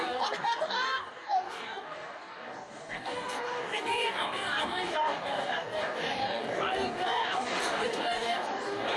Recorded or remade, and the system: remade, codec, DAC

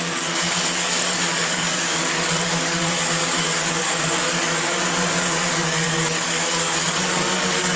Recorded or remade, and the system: remade, codec, DAC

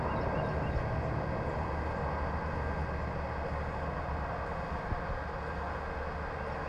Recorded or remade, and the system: recorded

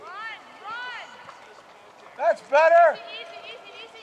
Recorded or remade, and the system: recorded